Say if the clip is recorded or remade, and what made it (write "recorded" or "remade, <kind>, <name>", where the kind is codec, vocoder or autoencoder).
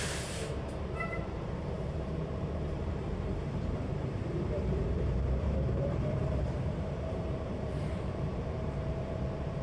remade, vocoder, BigVGAN v2